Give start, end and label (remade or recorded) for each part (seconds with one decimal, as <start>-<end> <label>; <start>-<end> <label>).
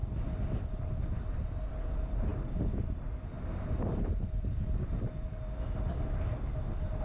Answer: 0.0-7.0 recorded